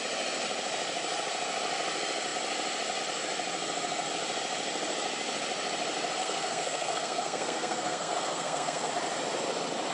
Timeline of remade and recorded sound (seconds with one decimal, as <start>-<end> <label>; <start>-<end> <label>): 0.0-6.2 recorded; 6.2-8.9 remade; 8.9-9.9 recorded